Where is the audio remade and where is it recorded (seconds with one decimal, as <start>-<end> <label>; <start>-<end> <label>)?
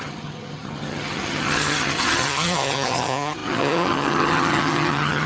0.0-5.3 remade